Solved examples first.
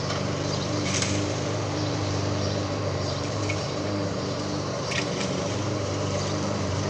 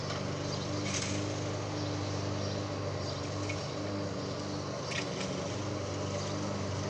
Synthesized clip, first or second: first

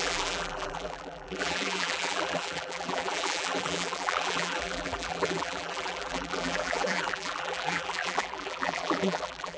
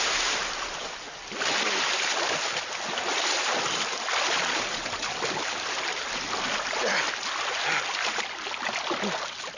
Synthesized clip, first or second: first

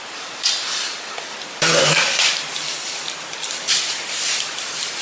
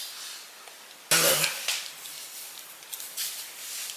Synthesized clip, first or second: first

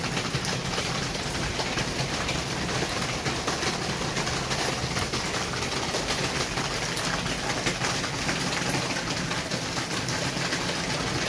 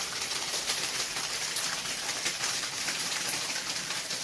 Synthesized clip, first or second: second